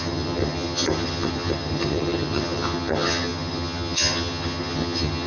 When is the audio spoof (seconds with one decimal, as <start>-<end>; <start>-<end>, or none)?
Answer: 0.0-5.3